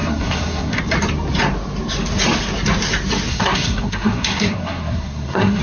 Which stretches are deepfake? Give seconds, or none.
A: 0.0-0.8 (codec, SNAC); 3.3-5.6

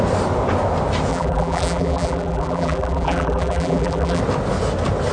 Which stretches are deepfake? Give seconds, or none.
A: 1.1-4.2 (vocoder, BigVGAN v2)

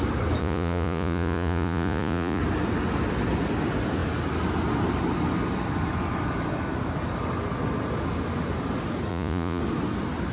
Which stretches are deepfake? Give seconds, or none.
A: 0.4-2.4 (vocoder, Vocos); 9.1-9.6

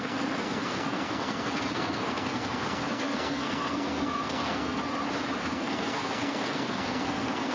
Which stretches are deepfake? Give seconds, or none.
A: 0.0-4.9 (codec, SNAC); 5.4-7.5

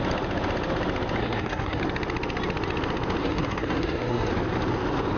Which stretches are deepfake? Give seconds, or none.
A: 1.2-1.8 (codec, SNAC); 3.2-4.3

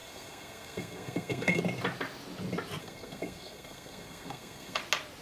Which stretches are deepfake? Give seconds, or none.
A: 0.0-1.6 (codec, SNAC); 2.8-4.8